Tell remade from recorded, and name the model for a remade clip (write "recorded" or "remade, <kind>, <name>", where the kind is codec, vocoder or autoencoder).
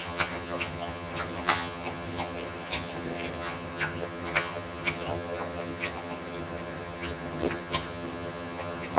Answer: remade, vocoder, HiFi-GAN